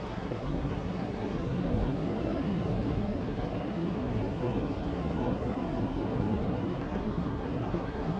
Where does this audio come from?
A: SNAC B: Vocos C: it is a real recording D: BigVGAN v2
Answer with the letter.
A